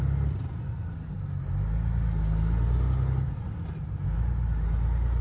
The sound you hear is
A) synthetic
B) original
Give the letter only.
B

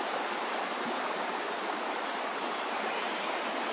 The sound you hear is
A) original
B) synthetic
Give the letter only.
B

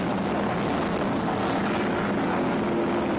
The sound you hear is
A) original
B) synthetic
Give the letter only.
A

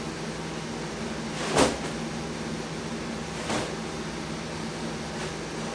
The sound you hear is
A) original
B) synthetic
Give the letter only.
A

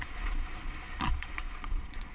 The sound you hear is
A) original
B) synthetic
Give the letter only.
B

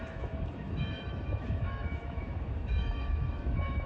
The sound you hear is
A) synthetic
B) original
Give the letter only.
A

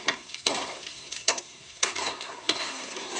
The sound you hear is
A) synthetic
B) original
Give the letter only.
A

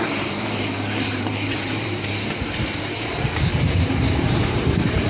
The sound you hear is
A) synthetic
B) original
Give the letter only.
A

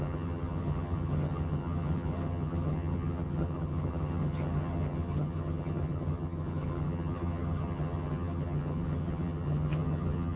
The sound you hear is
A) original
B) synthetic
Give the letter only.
B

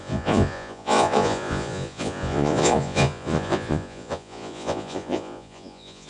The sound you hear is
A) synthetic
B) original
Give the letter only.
A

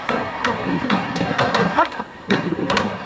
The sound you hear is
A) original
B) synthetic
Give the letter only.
B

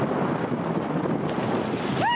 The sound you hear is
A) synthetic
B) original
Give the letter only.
B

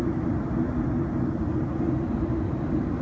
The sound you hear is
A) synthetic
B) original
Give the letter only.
B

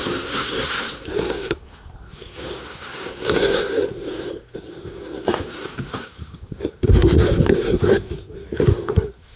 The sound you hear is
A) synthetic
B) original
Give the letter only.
A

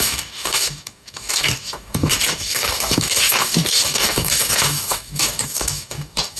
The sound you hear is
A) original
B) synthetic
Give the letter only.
B